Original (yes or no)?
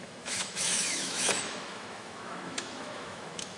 no